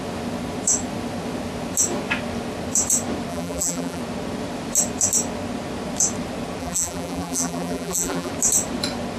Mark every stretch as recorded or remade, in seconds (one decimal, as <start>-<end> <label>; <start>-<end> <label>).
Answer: 0.0-3.3 recorded; 3.3-4.0 remade; 4.0-6.6 recorded; 6.6-8.3 remade; 8.3-9.2 recorded